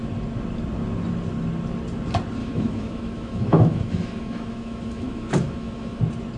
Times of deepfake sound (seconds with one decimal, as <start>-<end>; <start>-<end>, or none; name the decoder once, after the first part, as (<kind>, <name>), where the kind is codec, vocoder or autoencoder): 2.4-6.0 (autoencoder, DAC-VAE)